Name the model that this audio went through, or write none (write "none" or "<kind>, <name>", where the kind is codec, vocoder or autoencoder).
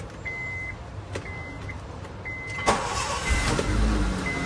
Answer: none